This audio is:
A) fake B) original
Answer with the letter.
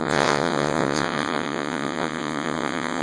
A